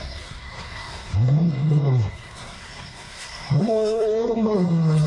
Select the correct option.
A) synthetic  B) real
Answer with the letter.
A